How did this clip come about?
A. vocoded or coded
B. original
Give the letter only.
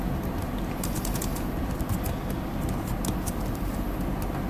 B